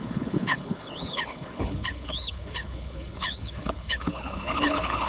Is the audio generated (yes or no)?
yes